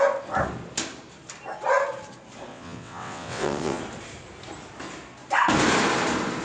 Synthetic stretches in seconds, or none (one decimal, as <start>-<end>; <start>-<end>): 2.5-3.8

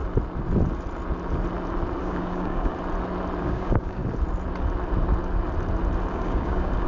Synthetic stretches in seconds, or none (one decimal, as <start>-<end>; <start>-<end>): 2.0-2.7; 3.4-4.0; 6.1-6.9

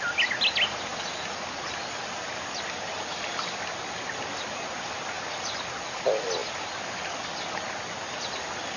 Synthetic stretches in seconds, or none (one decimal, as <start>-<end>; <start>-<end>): none

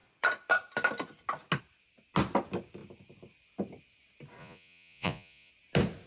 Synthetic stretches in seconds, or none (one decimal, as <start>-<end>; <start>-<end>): 4.4-5.5

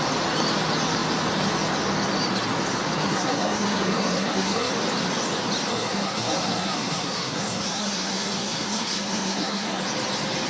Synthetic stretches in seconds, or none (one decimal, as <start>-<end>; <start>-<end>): 3.0-4.7; 5.7-9.8

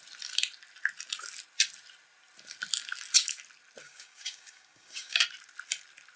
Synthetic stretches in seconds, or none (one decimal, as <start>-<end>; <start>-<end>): 3.8-5.2

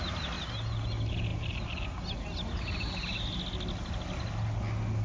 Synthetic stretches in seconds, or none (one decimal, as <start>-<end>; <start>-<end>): none

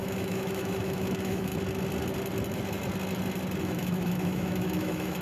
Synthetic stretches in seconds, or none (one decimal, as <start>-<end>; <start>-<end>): 0.0-1.5; 3.6-5.2